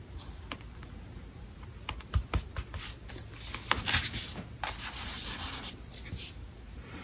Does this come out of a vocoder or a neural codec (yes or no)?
no